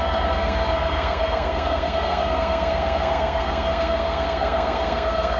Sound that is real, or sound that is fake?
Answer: fake